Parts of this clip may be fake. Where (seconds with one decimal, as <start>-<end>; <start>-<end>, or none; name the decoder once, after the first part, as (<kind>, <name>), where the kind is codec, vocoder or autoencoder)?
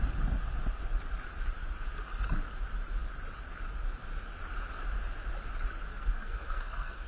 5.9-7.1 (codec, SNAC)